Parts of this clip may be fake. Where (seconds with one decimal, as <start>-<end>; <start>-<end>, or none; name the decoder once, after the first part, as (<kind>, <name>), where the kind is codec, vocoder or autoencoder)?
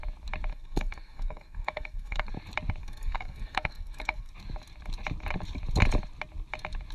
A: 0.5-2.3 (codec, SNAC); 2.8-4.3